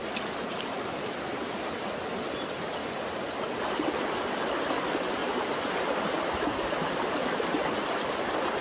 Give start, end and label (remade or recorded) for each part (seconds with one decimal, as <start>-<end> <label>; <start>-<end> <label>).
0.0-8.6 recorded